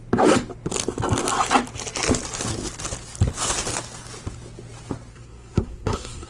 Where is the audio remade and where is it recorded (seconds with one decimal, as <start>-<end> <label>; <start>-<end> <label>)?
0.0-5.1 recorded; 5.1-6.3 remade